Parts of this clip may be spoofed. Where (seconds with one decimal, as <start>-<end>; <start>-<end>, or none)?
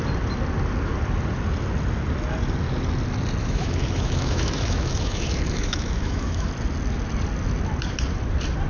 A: 3.4-6.5